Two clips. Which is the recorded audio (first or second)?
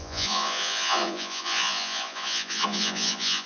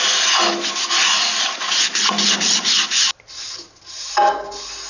second